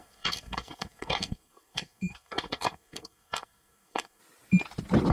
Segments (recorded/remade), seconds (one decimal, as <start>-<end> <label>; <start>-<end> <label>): 0.0-4.2 remade; 4.2-5.1 recorded